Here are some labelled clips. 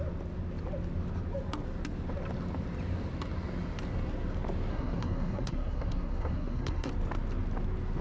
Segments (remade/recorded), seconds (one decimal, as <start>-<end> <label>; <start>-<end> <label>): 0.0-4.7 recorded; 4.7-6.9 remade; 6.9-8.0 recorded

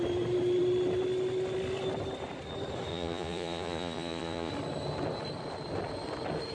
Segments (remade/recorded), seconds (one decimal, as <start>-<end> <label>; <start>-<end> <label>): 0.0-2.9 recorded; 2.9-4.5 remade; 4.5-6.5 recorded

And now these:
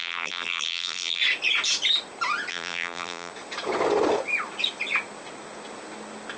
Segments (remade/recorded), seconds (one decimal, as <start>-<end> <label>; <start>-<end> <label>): 0.0-1.2 remade; 1.2-2.5 recorded; 2.5-3.3 remade; 3.3-6.4 recorded

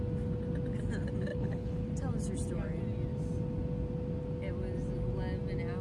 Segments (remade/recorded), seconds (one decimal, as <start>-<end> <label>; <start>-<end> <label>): 0.0-1.3 recorded; 1.3-1.8 remade; 1.8-5.8 recorded